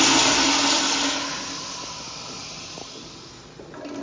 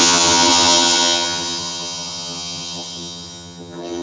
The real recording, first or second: first